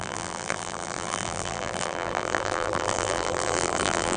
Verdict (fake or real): fake